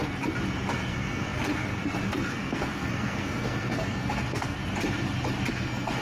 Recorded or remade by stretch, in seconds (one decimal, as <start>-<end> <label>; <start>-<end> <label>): 0.0-0.7 recorded; 0.7-4.6 remade; 4.6-5.5 recorded; 5.5-6.0 remade